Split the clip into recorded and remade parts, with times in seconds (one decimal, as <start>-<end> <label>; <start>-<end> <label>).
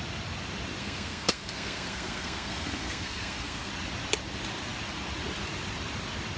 0.0-0.8 recorded; 0.8-3.7 remade; 3.7-6.4 recorded